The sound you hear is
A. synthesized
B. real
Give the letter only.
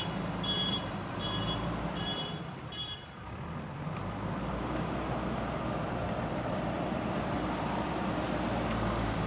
A